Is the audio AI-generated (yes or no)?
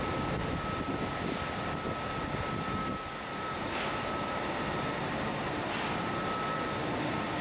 no